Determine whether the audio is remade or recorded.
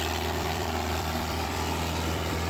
remade